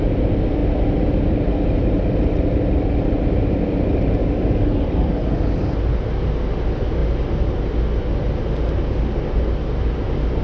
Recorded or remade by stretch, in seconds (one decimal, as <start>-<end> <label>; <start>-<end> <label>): 0.0-4.2 recorded; 4.2-4.8 remade; 4.8-10.4 recorded

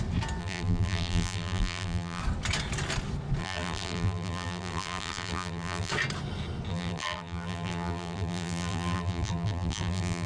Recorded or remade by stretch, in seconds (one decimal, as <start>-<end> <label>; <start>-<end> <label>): 0.0-0.4 recorded; 0.4-2.2 remade; 2.2-3.4 recorded; 3.4-5.9 remade; 5.9-6.7 recorded; 6.7-10.3 remade

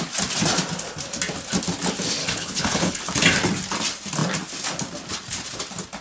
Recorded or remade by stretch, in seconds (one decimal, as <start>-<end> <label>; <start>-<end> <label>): 0.0-2.2 recorded; 2.2-3.0 remade; 3.0-6.0 recorded

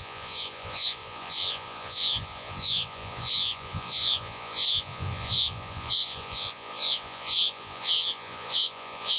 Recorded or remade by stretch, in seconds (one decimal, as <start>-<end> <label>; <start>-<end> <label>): 0.0-9.2 remade

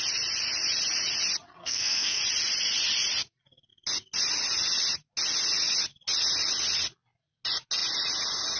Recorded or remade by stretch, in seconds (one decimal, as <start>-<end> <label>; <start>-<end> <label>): 0.0-1.6 recorded; 1.6-2.2 remade; 2.2-8.6 recorded

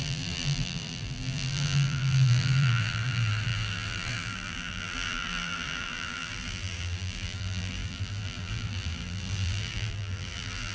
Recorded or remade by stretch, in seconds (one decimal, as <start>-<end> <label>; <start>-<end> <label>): 0.0-10.7 remade